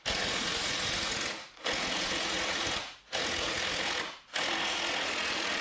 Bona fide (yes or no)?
no